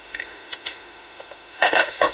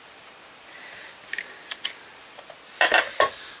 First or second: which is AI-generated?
first